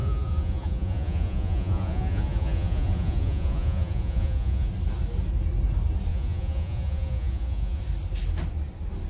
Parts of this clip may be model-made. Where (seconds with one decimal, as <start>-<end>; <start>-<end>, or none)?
0.0-4.7; 6.1-7.8